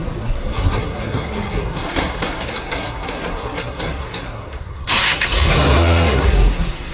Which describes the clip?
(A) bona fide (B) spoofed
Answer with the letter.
B